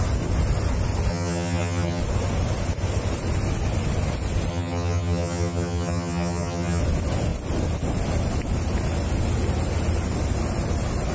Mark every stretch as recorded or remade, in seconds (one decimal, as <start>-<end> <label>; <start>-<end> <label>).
0.0-1.1 recorded; 1.1-2.0 remade; 2.0-4.5 recorded; 4.5-6.8 remade; 6.8-11.1 recorded